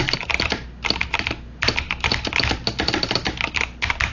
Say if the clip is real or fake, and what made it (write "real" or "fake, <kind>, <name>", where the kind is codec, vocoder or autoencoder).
real